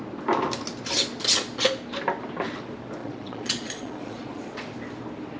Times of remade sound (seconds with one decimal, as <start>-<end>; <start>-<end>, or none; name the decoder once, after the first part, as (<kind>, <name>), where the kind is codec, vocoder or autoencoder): 3.0-4.5 (vocoder, Vocos)